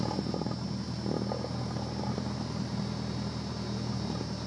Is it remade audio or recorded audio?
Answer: recorded